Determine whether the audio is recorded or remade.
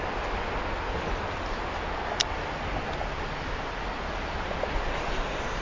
recorded